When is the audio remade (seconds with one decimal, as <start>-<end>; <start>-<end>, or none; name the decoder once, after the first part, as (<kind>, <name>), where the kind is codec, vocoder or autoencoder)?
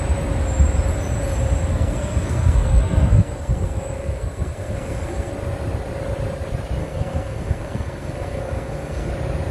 1.7-5.3 (codec, SNAC); 6.8-9.1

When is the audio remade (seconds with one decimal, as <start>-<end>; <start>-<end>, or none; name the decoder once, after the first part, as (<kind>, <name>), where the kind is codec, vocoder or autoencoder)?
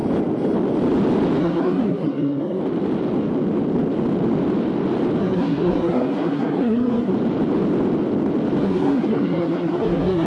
1.4-2.6 (codec, SNAC); 5.2-7.1; 8.6-10.3